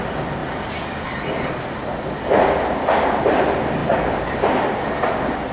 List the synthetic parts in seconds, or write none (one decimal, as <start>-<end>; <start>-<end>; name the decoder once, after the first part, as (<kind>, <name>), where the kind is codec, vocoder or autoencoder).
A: none